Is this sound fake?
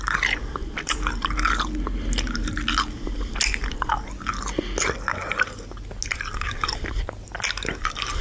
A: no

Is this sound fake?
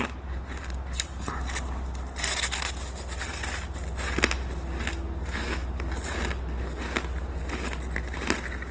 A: no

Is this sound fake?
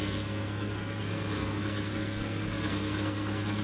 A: yes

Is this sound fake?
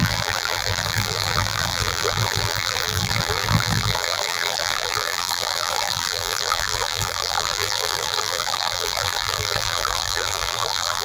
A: yes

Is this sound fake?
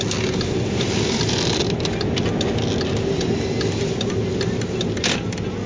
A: no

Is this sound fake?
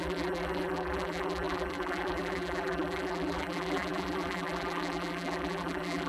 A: yes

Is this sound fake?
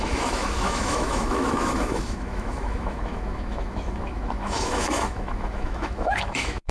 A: yes